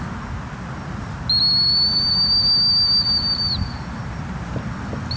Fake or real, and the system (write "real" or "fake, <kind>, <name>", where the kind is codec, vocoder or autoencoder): real